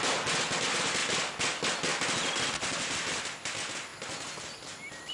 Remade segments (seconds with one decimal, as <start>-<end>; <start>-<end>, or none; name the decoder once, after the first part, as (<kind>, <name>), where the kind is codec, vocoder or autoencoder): none